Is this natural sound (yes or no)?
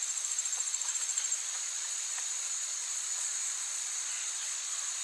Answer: no